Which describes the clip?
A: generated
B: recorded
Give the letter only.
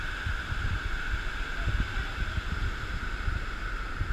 B